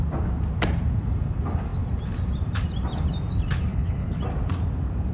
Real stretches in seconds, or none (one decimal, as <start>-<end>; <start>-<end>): 0.0-3.7; 4.2-5.1